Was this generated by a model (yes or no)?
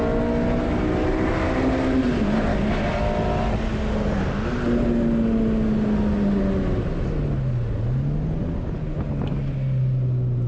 no